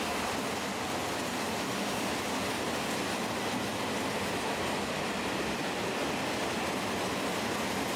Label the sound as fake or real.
real